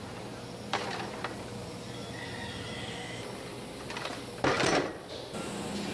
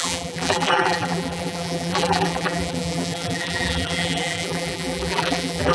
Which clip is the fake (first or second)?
second